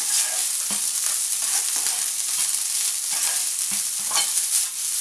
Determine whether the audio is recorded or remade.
recorded